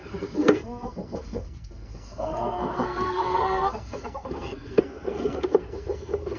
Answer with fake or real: fake